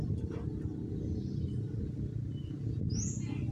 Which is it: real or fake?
real